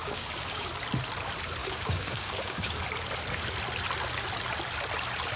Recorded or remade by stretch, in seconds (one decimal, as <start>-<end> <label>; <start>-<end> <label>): 0.0-0.7 remade; 0.7-1.6 recorded; 1.6-2.8 remade; 2.8-5.4 recorded